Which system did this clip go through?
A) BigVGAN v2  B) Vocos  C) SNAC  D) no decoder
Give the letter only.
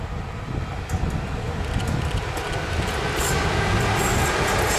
D